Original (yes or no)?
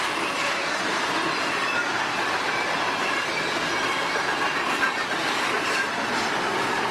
yes